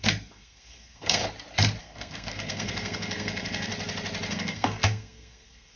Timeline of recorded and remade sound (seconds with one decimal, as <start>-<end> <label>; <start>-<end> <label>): 0.0-1.2 remade; 1.2-1.8 recorded; 1.8-3.7 remade; 3.7-4.3 recorded; 4.3-5.8 remade